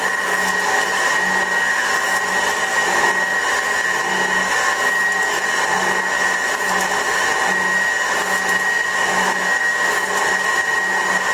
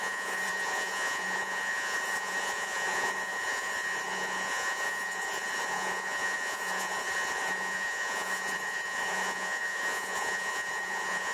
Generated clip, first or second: second